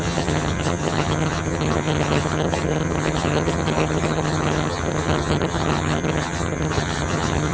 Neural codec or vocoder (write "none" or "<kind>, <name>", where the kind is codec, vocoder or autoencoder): vocoder, HiFi-GAN